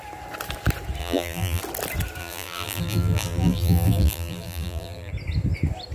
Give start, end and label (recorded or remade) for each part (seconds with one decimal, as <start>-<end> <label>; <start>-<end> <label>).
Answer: 0.0-1.0 recorded; 1.0-1.6 remade; 1.6-2.2 recorded; 2.2-5.1 remade; 5.1-5.9 recorded